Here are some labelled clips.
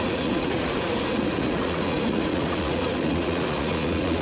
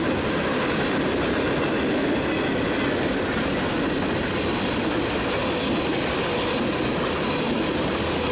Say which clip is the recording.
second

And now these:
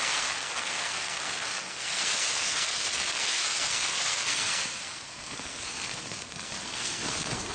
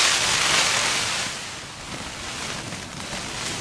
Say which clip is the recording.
second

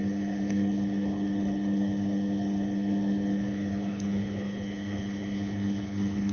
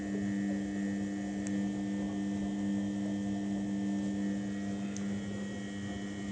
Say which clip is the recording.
second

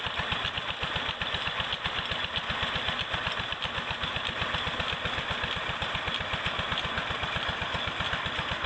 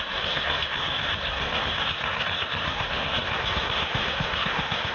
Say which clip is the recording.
first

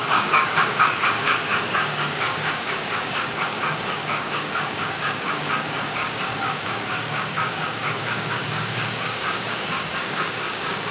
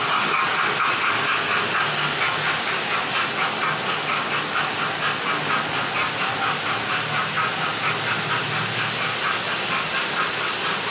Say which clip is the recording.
second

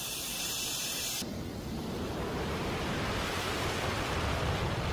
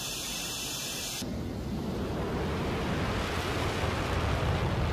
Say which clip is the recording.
second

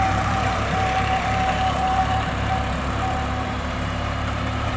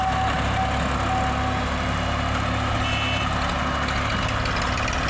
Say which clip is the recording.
second